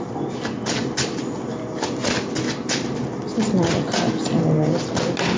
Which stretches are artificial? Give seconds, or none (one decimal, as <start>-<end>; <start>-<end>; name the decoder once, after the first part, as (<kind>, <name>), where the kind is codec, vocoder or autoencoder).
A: none